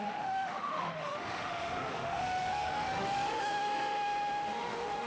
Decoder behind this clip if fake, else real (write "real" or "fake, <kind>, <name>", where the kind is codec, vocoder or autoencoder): fake, autoencoder, DAC-VAE